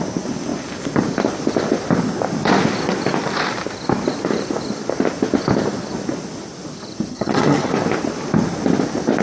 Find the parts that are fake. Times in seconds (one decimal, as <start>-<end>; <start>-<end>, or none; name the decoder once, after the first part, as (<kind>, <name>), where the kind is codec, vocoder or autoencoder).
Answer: 7.1-7.7 (vocoder, HiFi-GAN)